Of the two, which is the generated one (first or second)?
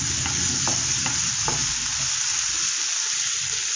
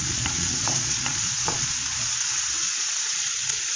second